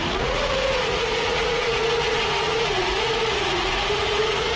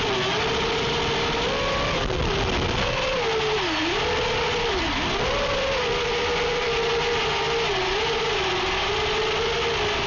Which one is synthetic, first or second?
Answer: first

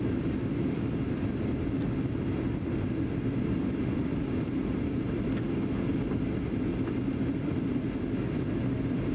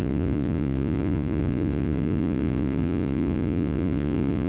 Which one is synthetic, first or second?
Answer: second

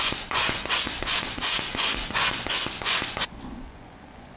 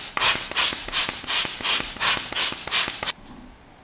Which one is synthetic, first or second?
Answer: first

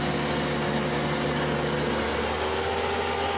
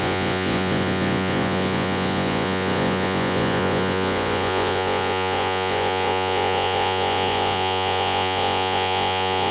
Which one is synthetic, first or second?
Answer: second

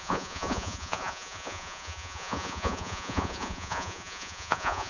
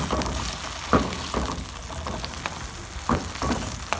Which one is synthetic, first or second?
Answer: first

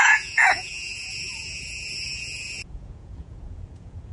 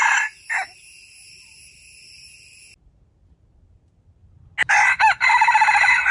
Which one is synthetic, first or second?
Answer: first